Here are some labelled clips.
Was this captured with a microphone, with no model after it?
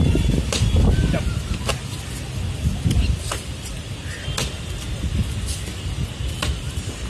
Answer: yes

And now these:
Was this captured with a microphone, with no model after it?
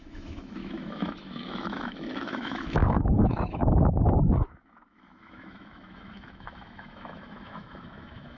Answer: no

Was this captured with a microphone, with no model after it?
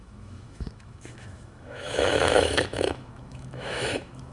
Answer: no